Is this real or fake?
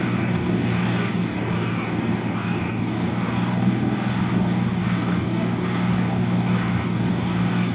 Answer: fake